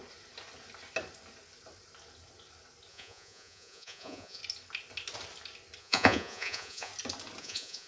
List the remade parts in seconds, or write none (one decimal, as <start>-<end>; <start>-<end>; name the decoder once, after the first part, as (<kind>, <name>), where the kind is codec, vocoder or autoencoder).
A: 2.9-4.4 (vocoder, Vocos); 5.8-6.9; 7.4-7.9

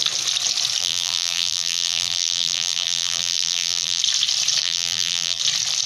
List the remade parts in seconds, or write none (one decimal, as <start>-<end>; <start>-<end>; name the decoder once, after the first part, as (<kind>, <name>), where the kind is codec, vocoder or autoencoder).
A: 0.8-4.0 (vocoder, BigVGAN v2); 4.6-5.4

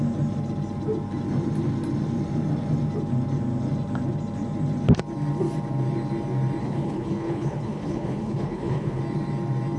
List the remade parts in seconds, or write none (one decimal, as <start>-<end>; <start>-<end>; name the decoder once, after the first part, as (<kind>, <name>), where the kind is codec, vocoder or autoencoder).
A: 6.6-9.0 (codec, HILCodec)

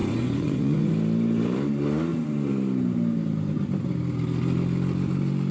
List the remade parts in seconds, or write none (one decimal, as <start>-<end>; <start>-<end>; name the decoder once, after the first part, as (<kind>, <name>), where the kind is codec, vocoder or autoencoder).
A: 0.0-0.9 (vocoder, Vocos)

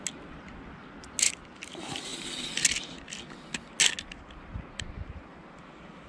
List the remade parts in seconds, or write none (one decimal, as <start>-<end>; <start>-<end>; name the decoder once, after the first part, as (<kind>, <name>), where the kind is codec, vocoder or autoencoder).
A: none

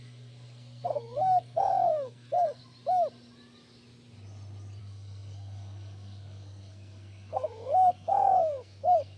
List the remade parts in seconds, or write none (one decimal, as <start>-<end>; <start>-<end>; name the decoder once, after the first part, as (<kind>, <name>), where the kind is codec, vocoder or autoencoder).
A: 0.0-2.6 (codec, SNAC); 4.8-9.2